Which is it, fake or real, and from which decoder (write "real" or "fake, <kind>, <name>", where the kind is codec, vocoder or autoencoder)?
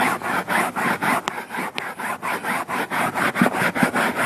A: real